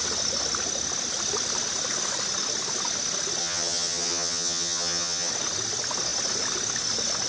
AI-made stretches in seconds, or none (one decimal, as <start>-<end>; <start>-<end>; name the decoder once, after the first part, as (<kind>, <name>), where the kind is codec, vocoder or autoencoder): 3.4-5.3 (vocoder, HiFi-GAN)